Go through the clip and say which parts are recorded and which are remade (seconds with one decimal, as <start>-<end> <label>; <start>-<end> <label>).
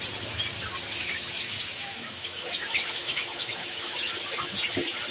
0.0-1.0 recorded; 1.0-4.1 remade; 4.1-5.1 recorded